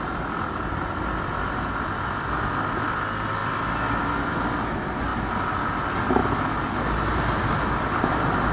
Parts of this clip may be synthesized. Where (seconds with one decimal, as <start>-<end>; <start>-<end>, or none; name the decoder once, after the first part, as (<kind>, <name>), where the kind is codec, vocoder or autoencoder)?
3.4-4.1 (vocoder, BigVGAN v2)